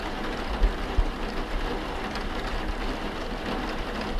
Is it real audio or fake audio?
real